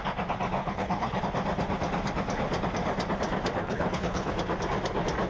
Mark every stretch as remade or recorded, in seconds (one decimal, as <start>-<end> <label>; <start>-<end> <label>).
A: 0.0-0.6 recorded; 0.6-1.2 remade; 1.2-3.6 recorded; 3.6-4.3 remade; 4.3-5.3 recorded